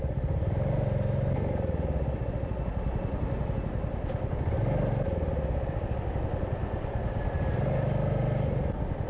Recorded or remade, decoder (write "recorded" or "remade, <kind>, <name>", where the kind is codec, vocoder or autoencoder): recorded